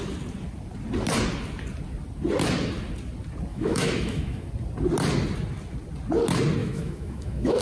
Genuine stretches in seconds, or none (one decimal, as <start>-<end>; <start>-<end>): 0.0-3.5; 4.5-6.6